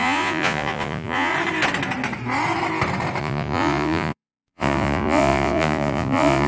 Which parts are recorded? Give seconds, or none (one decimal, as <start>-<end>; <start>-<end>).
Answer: 1.3-3.2